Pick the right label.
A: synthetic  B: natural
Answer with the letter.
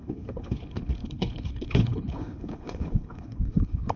A